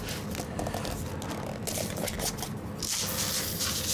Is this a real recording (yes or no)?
yes